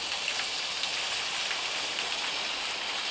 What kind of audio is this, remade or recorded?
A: remade